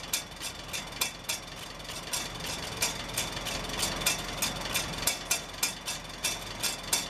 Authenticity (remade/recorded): recorded